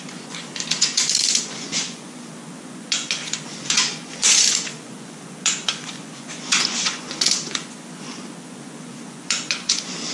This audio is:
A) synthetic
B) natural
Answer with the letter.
A